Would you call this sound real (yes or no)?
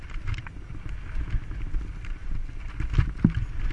yes